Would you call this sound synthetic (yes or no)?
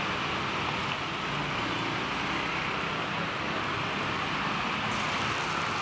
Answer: no